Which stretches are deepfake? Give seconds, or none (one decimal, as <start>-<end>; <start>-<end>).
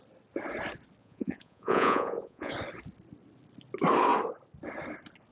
1.0-2.5